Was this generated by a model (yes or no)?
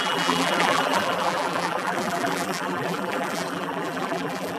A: yes